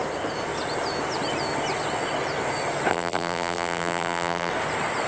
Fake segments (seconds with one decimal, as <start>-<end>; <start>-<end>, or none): 2.9-4.5